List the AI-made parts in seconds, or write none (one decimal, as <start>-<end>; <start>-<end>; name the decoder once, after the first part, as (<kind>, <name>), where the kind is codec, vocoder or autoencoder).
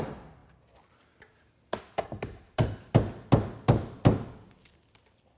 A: none